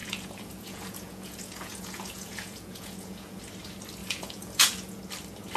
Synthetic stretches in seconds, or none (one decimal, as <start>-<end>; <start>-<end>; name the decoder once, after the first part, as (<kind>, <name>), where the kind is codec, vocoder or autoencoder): 0.0-3.4 (vocoder, Vocos); 4.0-5.0